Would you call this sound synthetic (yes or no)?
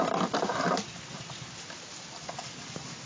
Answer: no